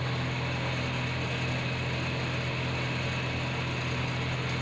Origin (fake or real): real